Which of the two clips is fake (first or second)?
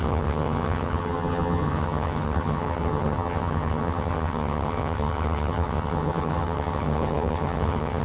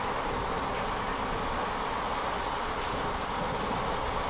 first